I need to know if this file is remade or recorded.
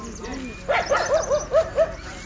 recorded